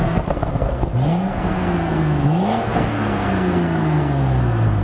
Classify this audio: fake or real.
fake